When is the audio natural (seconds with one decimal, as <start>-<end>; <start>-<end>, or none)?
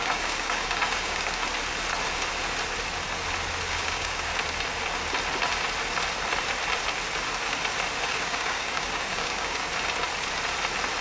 1.4-3.7; 4.3-8.1; 9.6-11.0